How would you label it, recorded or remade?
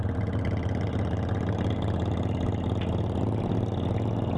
recorded